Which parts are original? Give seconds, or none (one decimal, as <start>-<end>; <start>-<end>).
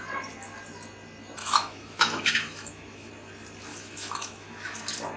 0.0-1.4; 3.1-3.7; 4.8-5.2